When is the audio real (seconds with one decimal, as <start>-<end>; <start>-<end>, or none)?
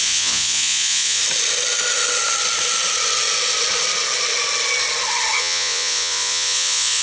1.2-5.4